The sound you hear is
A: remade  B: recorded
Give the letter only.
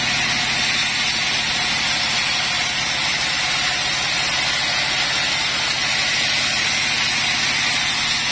B